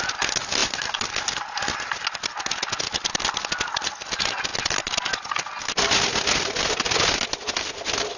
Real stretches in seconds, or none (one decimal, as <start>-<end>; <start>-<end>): 0.0-8.2